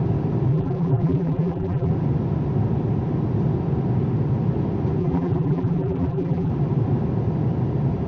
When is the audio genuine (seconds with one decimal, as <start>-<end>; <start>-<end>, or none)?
0.0-0.5; 1.9-5.0; 6.5-8.1

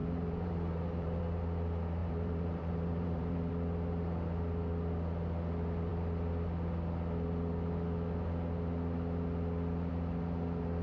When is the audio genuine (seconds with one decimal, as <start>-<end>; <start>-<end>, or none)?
1.2-2.0; 3.5-10.8

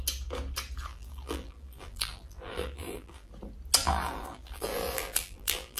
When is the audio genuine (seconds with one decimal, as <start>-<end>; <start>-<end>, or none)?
0.0-0.9; 3.3-3.8

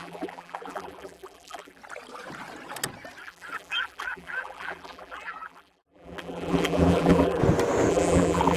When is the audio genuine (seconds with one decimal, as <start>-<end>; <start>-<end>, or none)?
1.8-3.2; 7.4-7.9